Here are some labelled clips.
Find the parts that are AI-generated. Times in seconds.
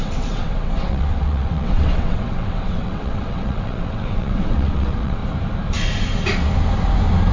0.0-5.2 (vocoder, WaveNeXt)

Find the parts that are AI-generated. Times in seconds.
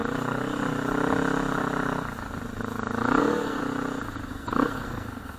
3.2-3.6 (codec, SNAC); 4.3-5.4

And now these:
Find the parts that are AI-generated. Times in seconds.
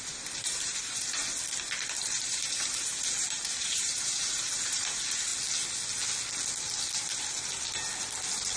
0.0-1.2 (vocoder, BigVGAN v2); 2.0-5.3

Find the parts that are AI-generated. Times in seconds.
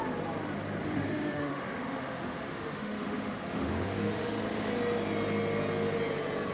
0.8-4.7 (autoencoder, DAC-VAE)